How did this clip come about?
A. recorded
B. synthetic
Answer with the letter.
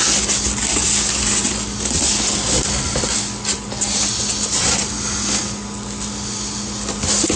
A